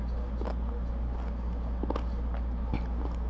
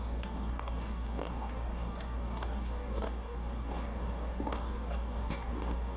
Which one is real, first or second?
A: first